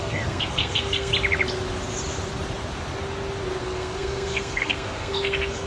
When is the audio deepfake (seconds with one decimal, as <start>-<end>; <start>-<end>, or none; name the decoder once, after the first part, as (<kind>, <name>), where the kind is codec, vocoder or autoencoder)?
0.0-1.1 (codec, SNAC); 3.6-5.7